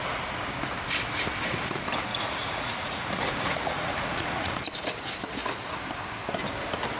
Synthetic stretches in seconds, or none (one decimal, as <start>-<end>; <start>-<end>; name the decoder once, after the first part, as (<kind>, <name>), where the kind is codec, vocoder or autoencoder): 2.1-4.7 (vocoder, Vocos)